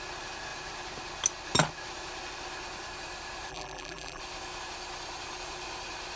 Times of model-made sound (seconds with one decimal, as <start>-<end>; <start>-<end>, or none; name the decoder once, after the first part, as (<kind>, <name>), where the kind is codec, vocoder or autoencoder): 3.5-4.2 (vocoder, BigVGAN v2)